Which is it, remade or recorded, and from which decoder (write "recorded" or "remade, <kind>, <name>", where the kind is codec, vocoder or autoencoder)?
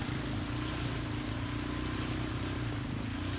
recorded